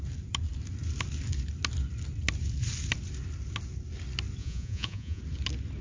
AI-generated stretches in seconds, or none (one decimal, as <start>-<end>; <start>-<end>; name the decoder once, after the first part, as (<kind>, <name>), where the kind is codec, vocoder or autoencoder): 4.4-5.2 (vocoder, Vocos)